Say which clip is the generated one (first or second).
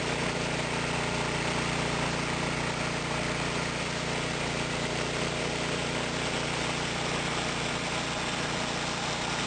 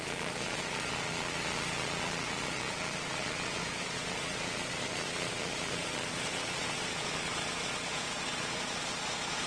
second